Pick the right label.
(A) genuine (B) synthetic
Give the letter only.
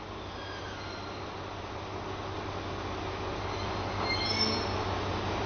A